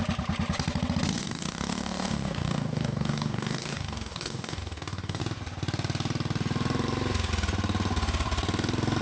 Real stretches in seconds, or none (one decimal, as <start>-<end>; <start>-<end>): 0.0-1.1; 5.2-9.0